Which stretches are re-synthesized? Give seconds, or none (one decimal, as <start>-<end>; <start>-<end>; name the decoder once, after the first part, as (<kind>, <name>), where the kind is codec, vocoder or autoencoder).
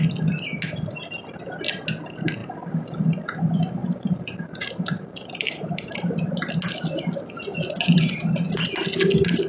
3.8-6.1 (vocoder, BigVGAN v2)